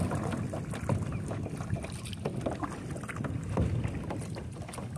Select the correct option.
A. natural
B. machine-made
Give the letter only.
A